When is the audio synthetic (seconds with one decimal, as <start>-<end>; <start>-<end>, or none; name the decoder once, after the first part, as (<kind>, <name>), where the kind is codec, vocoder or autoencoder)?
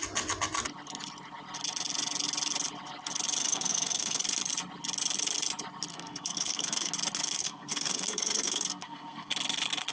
3.4-4.2 (codec, SNAC); 5.9-6.9; 7.4-9.3